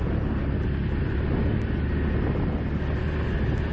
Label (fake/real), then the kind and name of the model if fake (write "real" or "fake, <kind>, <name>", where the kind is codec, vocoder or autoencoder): real